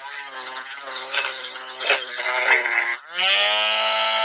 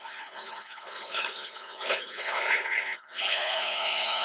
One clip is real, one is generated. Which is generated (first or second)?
second